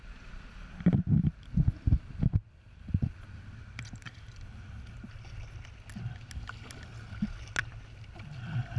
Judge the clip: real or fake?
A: real